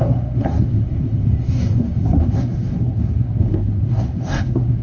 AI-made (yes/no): yes